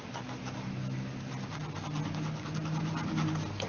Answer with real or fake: real